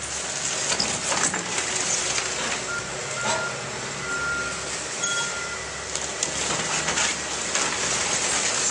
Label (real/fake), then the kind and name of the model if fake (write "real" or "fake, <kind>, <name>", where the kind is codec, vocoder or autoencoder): real